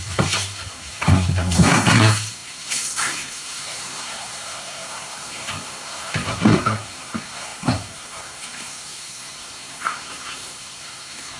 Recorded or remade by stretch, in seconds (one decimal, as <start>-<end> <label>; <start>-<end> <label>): 0.0-11.4 remade